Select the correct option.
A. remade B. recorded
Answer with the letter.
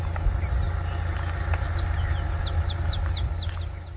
B